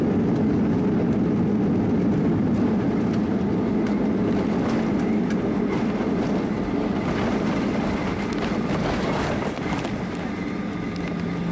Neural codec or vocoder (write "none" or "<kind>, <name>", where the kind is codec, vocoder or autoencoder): none